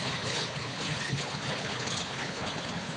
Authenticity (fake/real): fake